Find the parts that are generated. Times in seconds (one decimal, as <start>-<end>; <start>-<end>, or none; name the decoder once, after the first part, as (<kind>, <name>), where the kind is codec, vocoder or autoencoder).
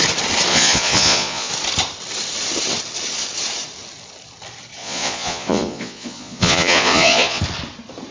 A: 0.5-1.5 (vocoder, Vocos); 4.8-7.4